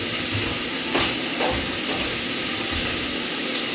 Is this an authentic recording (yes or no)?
yes